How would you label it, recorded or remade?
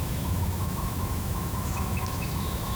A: remade